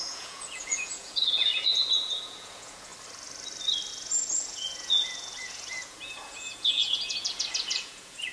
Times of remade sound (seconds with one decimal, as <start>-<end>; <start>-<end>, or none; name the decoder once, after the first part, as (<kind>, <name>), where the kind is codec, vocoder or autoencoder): 0.0-2.9 (vocoder, Vocos); 3.9-8.3